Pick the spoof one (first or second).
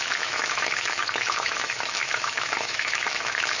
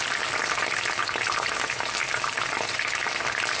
first